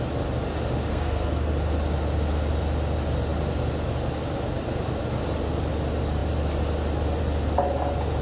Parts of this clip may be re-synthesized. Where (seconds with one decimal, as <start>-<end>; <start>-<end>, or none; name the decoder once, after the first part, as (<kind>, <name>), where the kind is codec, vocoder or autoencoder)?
0.9-1.5 (codec, SNAC)